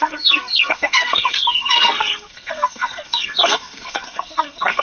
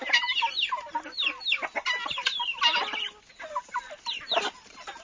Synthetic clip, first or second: first